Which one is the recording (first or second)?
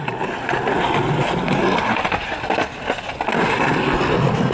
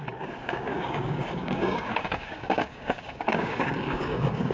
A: first